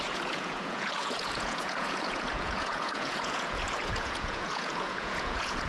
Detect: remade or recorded remade